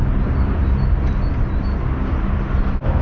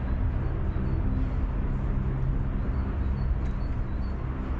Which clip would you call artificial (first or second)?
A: first